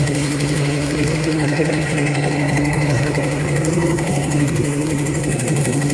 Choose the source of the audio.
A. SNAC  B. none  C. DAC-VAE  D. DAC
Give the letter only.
A